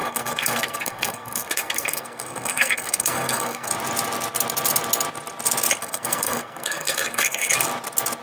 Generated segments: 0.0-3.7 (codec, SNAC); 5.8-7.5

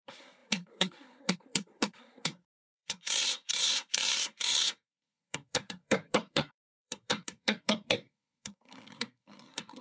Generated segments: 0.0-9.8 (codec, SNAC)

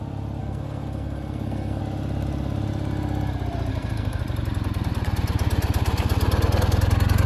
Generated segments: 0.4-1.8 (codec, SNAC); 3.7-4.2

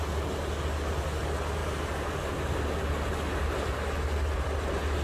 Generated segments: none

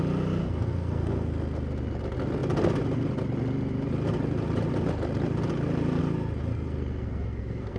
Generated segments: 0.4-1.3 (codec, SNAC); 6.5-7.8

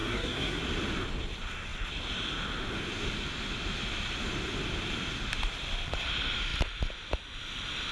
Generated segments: 0.0-0.6 (codec, SNAC)

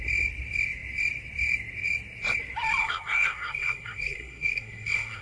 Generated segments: 2.8-5.2 (codec, SNAC)

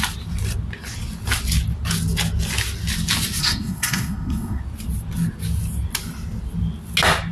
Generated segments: 3.4-4.6 (codec, SNAC)